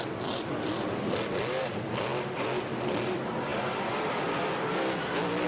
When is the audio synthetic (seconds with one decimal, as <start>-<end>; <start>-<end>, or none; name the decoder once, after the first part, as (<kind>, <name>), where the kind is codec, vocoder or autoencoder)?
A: none